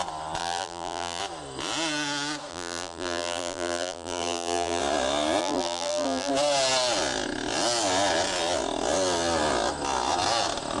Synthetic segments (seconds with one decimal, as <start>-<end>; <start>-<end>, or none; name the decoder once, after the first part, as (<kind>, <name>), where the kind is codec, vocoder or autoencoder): 0.4-1.2 (vocoder, BigVGAN v2); 2.5-4.8; 5.4-6.3